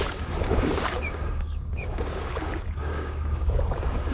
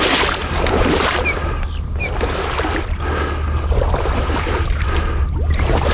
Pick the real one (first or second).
second